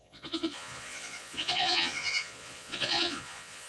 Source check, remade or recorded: remade